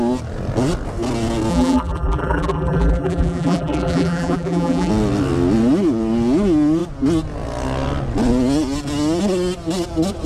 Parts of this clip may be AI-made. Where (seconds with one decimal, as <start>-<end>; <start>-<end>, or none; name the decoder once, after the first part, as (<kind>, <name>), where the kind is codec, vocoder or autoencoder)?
1.5-4.9 (vocoder, BigVGAN v2)